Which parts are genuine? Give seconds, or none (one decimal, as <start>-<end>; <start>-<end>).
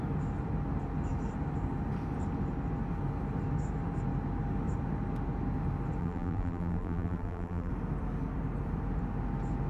0.0-6.0; 7.7-9.7